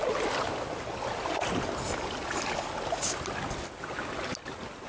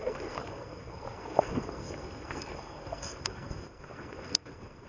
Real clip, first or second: first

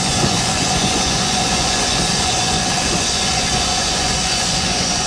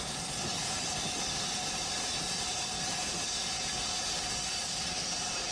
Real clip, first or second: second